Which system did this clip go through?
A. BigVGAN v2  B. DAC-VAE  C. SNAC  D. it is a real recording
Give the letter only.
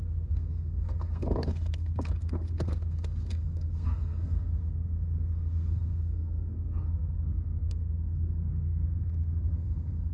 C